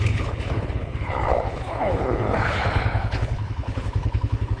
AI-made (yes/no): yes